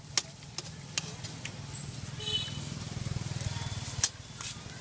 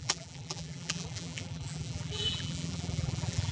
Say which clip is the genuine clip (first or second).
first